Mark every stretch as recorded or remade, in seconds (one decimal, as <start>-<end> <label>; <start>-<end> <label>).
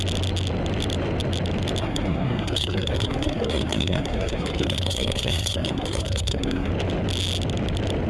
0.0-1.8 recorded; 1.8-6.7 remade; 6.7-8.1 recorded